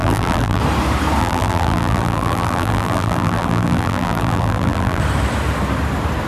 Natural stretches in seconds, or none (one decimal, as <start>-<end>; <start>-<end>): 0.6-1.2; 5.0-6.3